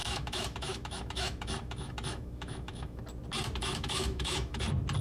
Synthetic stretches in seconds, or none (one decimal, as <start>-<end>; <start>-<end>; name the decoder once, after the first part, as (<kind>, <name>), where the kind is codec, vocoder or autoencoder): 0.0-3.0 (autoencoder, DAC-VAE); 3.6-4.6